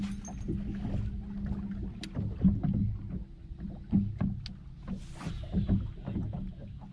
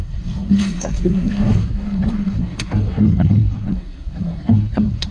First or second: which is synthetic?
second